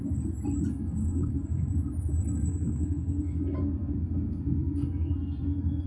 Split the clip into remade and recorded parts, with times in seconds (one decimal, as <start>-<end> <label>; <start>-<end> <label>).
0.0-0.7 recorded; 0.7-1.7 remade; 1.7-2.2 recorded; 2.2-5.9 remade